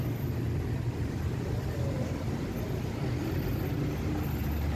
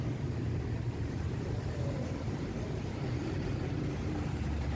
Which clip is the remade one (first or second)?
second